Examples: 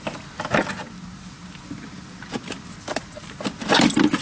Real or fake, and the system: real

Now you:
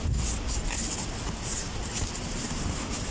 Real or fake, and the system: real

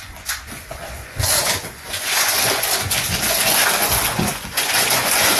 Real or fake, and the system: fake, vocoder, Vocos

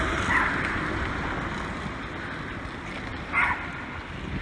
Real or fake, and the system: real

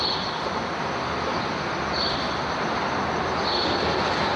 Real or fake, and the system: real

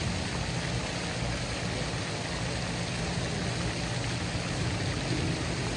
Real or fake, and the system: real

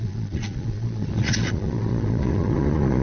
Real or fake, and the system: fake, vocoder, Vocos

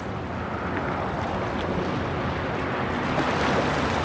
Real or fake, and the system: real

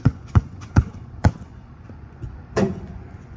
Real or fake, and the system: fake, vocoder, Vocos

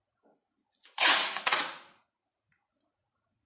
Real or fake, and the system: fake, vocoder, Vocos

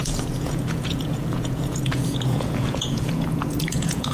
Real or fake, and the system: fake, vocoder, Vocos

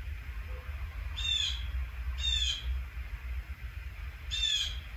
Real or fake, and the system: real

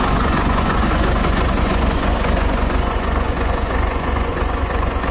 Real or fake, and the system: fake, vocoder, Vocos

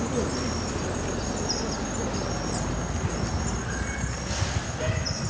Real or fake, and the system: real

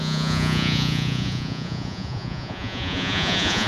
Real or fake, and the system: fake, vocoder, Vocos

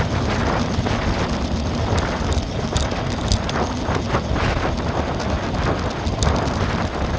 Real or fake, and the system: real